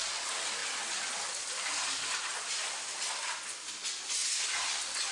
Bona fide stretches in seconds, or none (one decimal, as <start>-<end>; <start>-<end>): 0.0-5.1